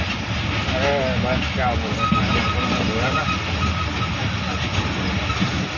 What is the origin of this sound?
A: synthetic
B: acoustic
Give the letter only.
B